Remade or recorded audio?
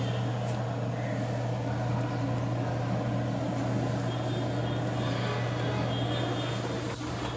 recorded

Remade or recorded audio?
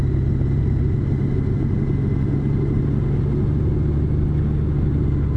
recorded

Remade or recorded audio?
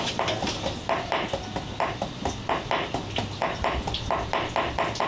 recorded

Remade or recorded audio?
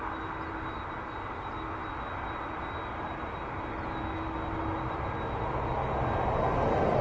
recorded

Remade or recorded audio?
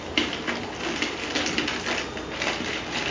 recorded